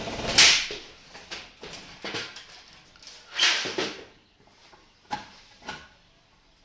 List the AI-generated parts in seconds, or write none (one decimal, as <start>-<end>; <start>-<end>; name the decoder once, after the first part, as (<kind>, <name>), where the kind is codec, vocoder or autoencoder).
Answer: none

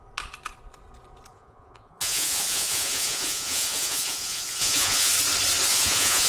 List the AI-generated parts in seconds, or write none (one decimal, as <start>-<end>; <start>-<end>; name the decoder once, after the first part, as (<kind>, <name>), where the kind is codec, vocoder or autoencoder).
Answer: 1.3-5.1 (vocoder, Vocos); 5.7-6.3

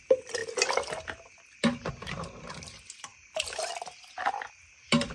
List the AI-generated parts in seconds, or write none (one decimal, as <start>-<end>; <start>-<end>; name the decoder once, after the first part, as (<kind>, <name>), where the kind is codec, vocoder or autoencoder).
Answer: 3.1-4.5 (vocoder, BigVGAN v2)